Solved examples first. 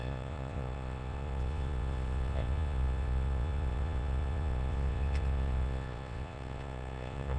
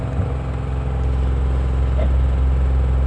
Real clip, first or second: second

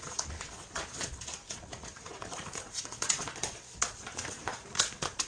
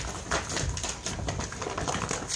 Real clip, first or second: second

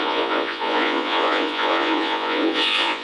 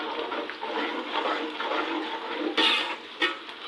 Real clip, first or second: second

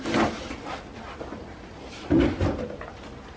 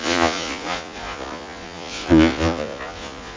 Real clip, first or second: first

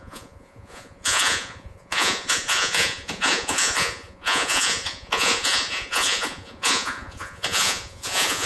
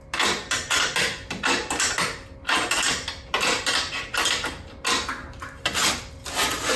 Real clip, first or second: second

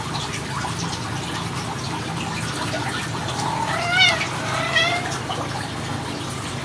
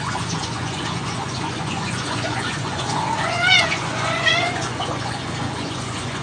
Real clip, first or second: first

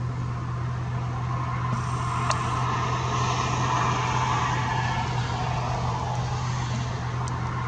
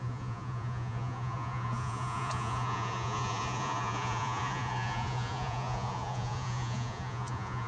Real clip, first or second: first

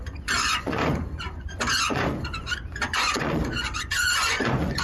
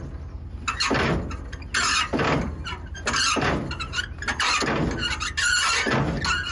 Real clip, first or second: second